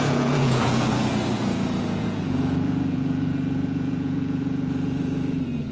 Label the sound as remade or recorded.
remade